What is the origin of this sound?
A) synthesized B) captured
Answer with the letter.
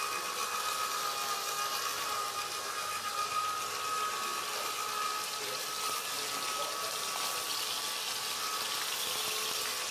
B